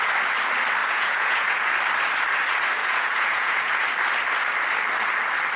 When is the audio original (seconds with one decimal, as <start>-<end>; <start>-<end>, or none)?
0.0-0.8; 1.7-2.8; 3.8-5.6